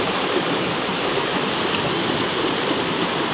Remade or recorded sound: remade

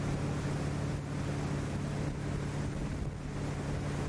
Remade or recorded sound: recorded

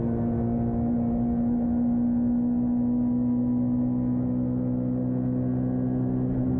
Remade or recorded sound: recorded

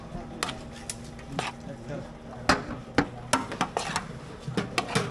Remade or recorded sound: recorded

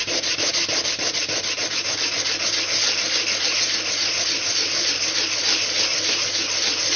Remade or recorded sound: recorded